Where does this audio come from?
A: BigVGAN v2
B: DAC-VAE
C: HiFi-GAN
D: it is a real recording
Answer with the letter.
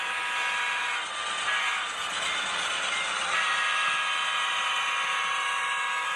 D